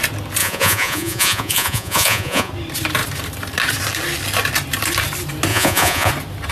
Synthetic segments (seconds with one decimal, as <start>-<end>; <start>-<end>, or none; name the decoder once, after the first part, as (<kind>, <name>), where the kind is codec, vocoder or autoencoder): 0.4-2.5 (vocoder, Vocos); 5.5-6.1